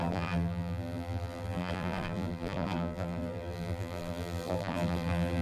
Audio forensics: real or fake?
fake